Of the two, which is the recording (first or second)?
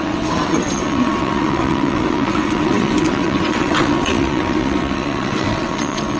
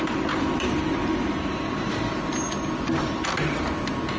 second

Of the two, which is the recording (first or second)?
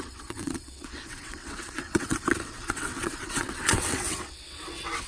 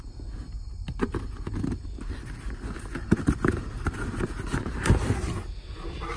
second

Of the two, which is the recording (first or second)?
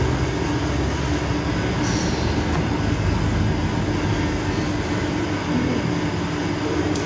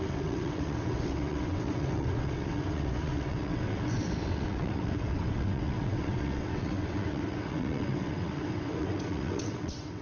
first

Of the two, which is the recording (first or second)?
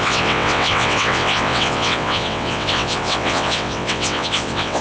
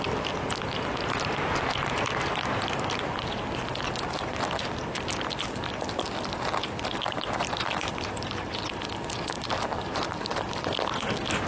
second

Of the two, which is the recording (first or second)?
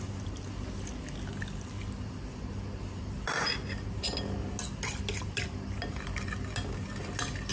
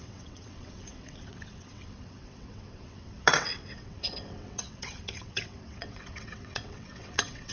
first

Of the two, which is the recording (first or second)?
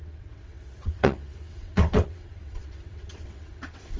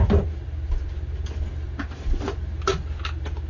second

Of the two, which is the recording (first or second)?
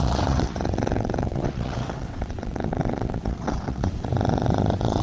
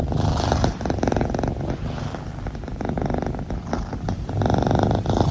second